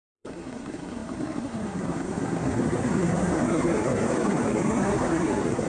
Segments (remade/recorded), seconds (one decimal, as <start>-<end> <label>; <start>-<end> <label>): 0.0-5.7 remade